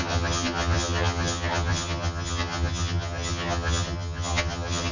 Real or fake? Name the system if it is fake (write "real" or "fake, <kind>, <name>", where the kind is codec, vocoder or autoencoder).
fake, vocoder, HiFi-GAN